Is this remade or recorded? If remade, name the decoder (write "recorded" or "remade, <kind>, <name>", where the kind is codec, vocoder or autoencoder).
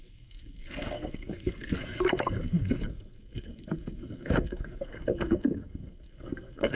remade, codec, SNAC